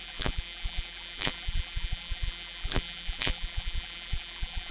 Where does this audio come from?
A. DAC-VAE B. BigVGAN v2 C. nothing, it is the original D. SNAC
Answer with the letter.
B